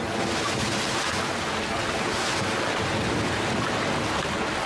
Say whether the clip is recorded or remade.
recorded